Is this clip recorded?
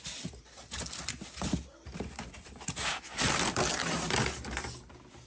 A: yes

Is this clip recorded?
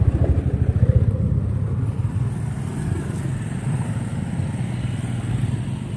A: yes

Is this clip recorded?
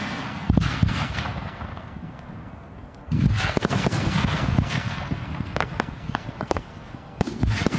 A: no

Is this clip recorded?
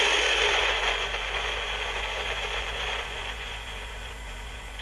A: no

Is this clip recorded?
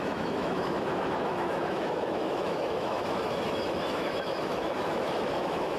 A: no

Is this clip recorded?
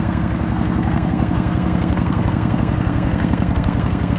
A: no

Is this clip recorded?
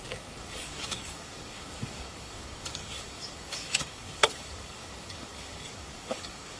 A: no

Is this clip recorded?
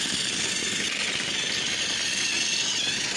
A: yes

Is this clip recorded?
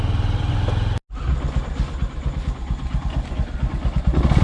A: yes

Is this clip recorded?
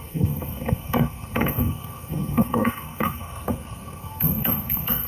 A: no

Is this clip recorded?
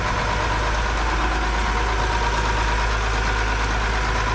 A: yes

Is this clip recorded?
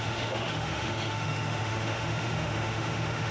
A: no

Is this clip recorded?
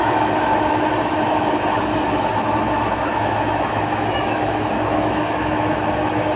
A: no